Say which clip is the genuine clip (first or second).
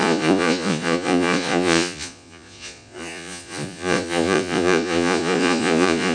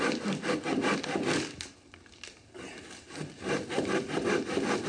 second